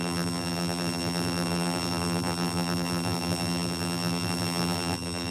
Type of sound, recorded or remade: remade